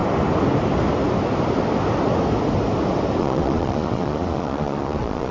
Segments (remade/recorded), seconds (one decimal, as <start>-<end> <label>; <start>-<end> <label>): 0.0-3.2 recorded; 3.2-5.3 remade